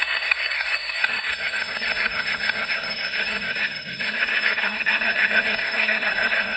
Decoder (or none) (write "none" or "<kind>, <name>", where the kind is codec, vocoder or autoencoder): codec, SNAC